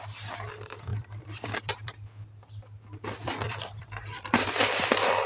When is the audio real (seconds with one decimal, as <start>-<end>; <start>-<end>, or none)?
none